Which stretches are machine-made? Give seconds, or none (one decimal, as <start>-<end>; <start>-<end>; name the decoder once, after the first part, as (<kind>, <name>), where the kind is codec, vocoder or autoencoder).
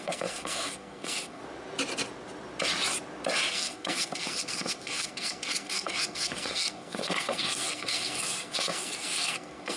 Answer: 0.0-1.4 (codec, SNAC); 3.5-9.8